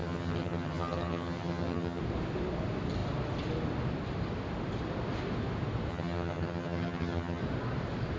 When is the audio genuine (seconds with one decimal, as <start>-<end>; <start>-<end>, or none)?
2.0-5.9; 7.4-8.2